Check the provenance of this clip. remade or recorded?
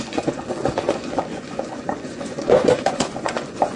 remade